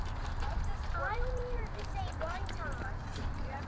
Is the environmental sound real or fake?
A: fake